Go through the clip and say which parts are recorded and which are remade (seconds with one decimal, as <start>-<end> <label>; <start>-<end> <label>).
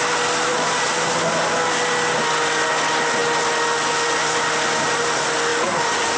0.0-6.2 recorded